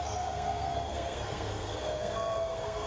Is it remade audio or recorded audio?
remade